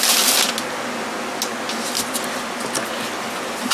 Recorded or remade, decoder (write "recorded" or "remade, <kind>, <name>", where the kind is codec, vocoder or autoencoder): recorded